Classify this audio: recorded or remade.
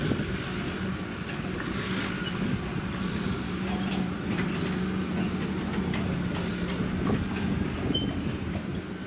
recorded